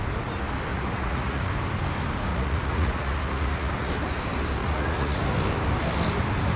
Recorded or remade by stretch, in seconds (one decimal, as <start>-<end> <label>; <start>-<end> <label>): 0.0-0.7 recorded; 0.7-1.5 remade; 1.5-2.3 recorded; 2.3-3.9 remade; 3.9-4.6 recorded; 4.6-5.2 remade; 5.2-6.6 recorded